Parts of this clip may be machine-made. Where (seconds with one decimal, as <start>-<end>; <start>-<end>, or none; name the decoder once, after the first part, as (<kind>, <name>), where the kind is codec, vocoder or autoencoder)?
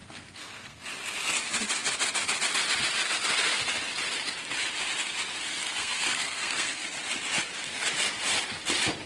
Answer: 0.0-0.9 (codec, SNAC); 5.4-6.8